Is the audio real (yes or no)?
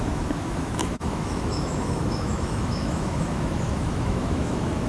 no